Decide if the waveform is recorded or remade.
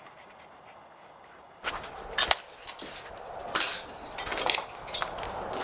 recorded